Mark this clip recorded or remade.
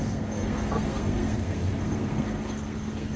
remade